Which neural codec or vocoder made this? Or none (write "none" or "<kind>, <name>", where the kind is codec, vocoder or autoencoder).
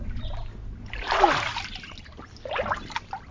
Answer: none